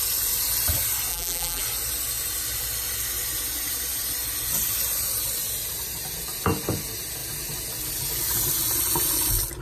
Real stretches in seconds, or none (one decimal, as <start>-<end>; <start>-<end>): 0.0-1.1; 1.6-9.6